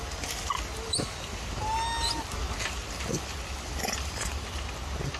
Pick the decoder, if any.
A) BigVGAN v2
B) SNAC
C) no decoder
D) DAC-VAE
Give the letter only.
C